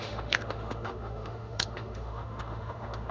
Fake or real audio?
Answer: fake